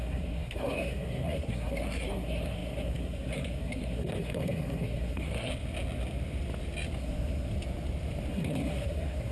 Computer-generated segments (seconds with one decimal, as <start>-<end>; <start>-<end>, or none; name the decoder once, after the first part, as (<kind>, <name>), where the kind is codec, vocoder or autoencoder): 0.0-5.5 (codec, SNAC); 7.0-7.5; 8.3-9.3